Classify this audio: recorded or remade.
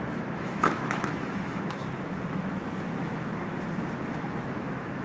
remade